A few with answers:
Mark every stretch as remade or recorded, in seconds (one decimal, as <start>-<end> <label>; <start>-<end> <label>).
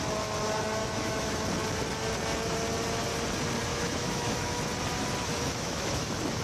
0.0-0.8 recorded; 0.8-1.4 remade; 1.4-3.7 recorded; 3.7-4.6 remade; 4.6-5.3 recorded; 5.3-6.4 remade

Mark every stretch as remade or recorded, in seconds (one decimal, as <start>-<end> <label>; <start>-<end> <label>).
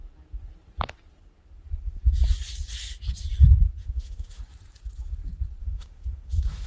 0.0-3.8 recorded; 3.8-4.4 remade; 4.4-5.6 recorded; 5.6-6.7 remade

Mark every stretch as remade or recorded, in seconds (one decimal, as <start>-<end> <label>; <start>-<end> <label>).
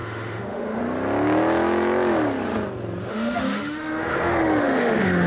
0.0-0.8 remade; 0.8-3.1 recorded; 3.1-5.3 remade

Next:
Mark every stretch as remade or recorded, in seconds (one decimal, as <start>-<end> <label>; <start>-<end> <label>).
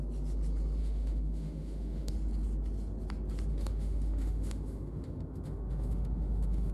0.0-0.8 recorded; 0.8-2.1 remade; 2.1-3.5 recorded; 3.5-6.7 remade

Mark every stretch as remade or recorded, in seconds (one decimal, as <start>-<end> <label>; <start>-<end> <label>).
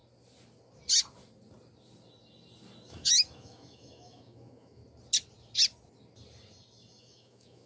0.0-2.9 recorded; 2.9-4.8 remade; 4.8-7.0 recorded; 7.0-7.7 remade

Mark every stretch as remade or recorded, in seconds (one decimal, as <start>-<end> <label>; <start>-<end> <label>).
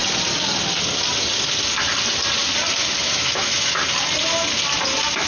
0.0-3.0 recorded; 3.0-3.8 remade; 3.8-5.3 recorded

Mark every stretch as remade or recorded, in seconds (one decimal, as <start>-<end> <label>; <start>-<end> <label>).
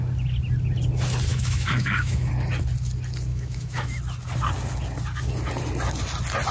0.0-1.3 recorded; 1.3-2.3 remade; 2.3-3.3 recorded; 3.3-4.0 remade; 4.0-6.5 recorded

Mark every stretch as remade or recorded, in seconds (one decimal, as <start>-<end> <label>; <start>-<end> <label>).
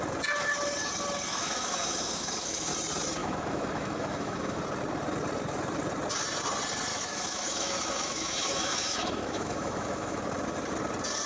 0.0-1.3 recorded; 1.3-2.7 remade; 2.7-3.2 recorded; 3.2-4.6 remade; 4.6-6.9 recorded; 6.9-10.2 remade; 10.2-11.3 recorded